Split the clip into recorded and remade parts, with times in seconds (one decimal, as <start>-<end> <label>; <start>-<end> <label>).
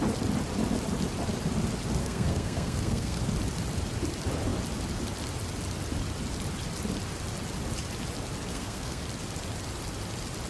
0.0-2.0 recorded; 2.0-3.2 remade; 3.2-8.5 recorded; 8.5-9.0 remade; 9.0-10.5 recorded